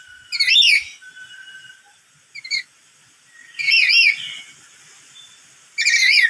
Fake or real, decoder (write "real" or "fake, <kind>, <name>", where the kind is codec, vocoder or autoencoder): real